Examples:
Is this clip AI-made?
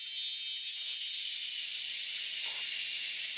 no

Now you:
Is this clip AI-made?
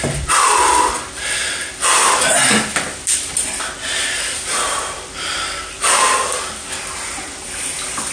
yes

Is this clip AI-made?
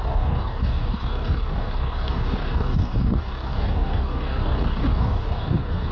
yes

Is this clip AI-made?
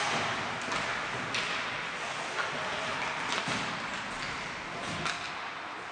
no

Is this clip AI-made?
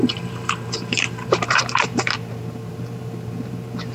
yes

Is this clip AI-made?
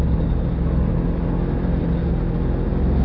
no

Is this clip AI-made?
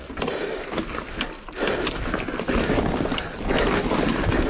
no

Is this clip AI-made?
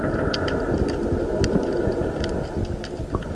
no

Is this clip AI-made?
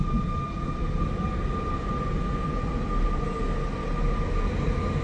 no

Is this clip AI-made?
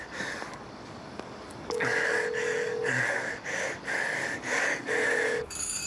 yes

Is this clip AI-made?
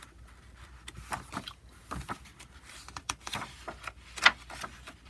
no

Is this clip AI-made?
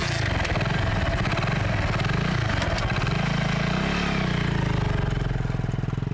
no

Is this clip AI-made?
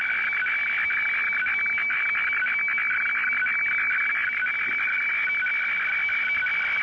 no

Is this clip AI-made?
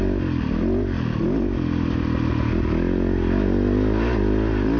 no